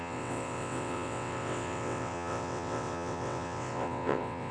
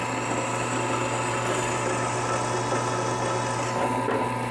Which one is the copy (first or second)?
first